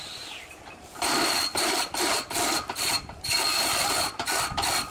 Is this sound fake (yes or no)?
yes